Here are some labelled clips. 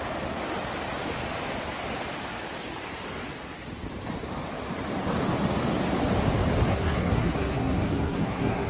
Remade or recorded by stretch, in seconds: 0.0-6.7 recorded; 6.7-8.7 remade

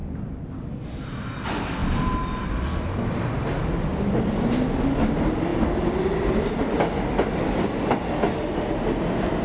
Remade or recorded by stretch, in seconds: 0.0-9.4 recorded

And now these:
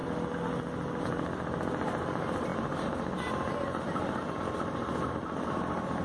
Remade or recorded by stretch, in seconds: 0.0-1.0 recorded; 1.0-6.0 remade

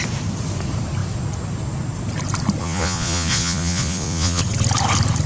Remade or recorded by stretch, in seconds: 0.0-2.6 recorded; 2.6-4.4 remade; 4.4-5.3 recorded

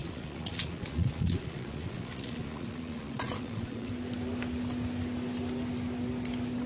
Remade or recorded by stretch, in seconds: 0.0-3.9 remade; 3.9-6.7 recorded

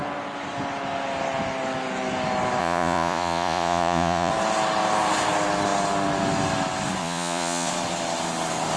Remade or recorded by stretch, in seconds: 0.0-2.6 recorded; 2.6-4.3 remade; 4.3-7.0 recorded; 7.0-7.7 remade; 7.7-8.8 recorded